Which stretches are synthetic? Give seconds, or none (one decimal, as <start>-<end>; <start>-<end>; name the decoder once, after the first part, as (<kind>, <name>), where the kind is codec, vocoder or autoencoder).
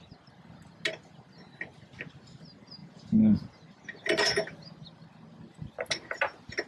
2.8-3.5 (vocoder, Vocos)